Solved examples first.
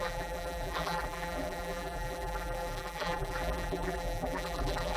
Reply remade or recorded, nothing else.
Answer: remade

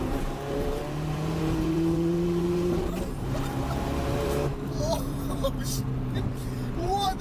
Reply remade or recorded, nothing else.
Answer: remade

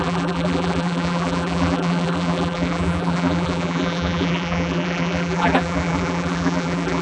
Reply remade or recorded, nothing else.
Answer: remade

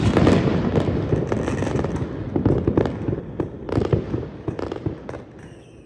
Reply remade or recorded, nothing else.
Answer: recorded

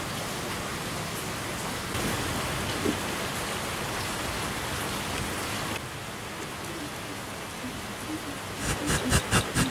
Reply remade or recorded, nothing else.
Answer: recorded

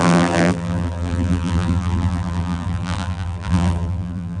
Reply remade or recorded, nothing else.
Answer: remade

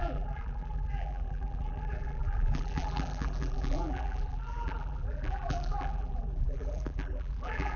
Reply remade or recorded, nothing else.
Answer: remade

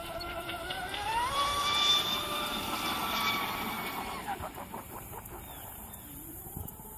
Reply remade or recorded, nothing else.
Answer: remade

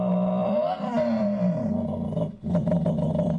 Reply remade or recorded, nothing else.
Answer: remade